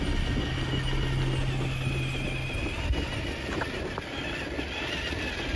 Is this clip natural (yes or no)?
yes